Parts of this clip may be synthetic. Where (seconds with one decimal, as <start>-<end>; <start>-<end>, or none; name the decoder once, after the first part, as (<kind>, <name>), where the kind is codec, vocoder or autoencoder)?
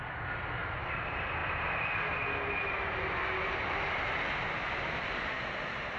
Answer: none